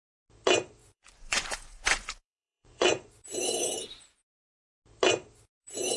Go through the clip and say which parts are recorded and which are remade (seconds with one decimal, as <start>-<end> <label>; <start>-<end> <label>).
0.0-0.8 recorded; 0.8-3.1 remade; 3.1-6.0 recorded